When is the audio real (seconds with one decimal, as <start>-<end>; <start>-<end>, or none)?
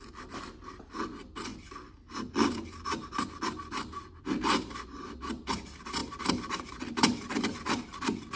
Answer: 1.5-5.3